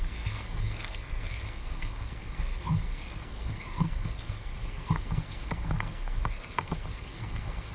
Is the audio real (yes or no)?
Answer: no